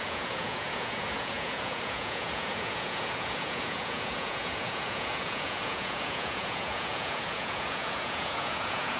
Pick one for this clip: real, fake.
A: fake